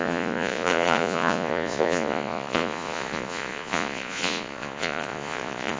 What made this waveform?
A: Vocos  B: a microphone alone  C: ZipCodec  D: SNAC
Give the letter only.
A